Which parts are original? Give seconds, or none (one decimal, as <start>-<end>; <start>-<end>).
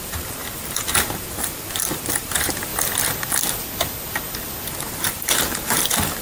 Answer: 2.7-4.7